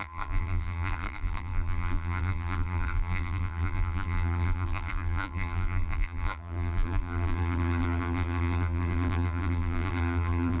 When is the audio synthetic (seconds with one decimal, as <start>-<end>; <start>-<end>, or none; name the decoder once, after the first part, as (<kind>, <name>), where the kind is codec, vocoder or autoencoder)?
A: 0.0-10.6 (vocoder, BigVGAN v2)